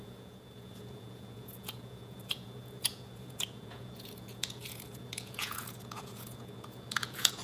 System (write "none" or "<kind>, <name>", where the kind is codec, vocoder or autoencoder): vocoder, Vocos